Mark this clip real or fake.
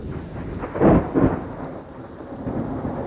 real